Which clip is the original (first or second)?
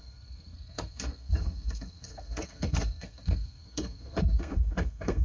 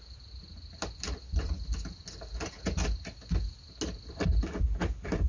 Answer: second